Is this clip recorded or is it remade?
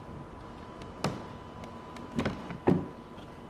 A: recorded